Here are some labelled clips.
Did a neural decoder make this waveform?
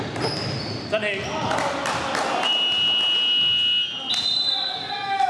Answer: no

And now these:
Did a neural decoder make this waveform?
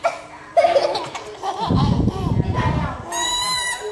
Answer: no